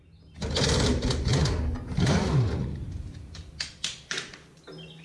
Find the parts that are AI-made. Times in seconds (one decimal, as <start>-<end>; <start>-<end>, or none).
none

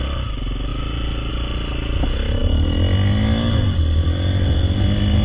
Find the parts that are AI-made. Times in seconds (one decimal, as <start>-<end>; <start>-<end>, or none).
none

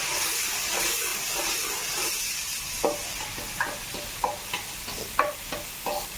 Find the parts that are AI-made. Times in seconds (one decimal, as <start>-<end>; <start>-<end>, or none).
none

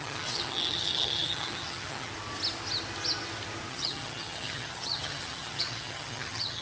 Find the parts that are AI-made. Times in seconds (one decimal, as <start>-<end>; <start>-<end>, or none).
0.0-2.1; 3.7-6.6